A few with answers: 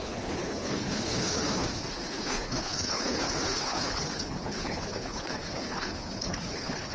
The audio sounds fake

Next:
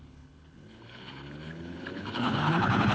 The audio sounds fake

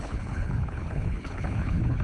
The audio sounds fake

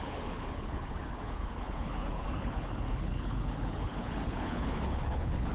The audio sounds fake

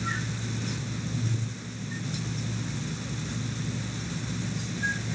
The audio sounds real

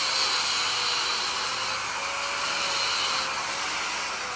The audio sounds real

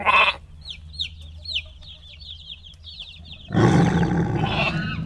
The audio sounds real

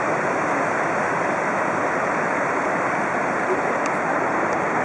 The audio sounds real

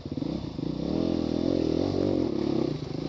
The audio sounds real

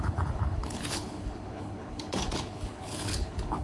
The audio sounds fake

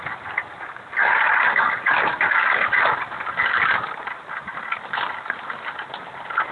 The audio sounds real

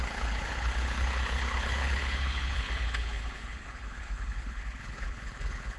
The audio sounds fake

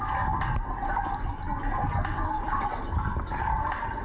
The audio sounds real